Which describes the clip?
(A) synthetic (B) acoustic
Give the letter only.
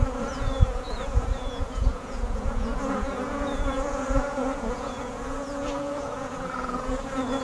A